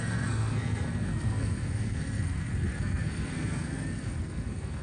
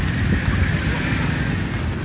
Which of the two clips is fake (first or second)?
first